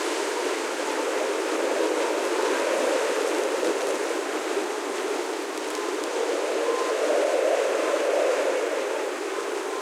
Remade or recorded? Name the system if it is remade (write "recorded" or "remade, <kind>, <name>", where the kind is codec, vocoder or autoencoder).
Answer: recorded